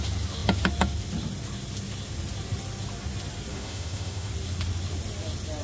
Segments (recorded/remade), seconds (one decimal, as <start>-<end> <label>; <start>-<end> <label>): 0.0-3.5 recorded; 3.5-4.3 remade; 4.3-5.6 recorded